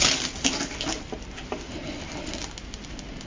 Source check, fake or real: real